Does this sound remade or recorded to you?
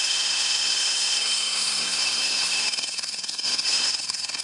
remade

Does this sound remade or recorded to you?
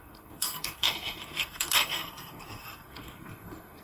remade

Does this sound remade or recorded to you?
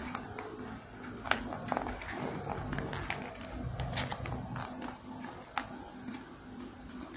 recorded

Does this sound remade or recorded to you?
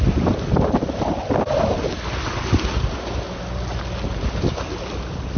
recorded